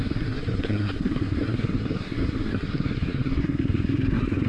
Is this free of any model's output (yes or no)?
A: no